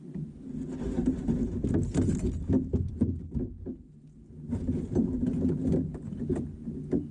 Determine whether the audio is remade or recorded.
recorded